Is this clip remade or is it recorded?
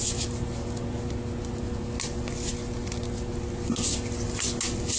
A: recorded